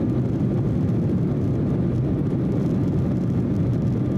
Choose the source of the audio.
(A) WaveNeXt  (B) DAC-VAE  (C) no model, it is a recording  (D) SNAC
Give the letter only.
C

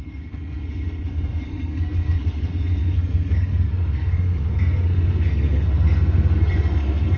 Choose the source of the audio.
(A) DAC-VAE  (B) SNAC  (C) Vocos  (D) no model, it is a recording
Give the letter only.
B